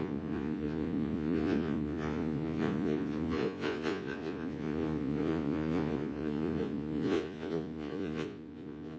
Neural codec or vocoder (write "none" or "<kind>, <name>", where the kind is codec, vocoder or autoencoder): vocoder, Vocos